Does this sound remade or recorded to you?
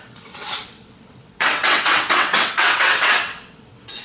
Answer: remade